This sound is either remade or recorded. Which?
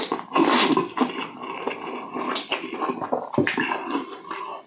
recorded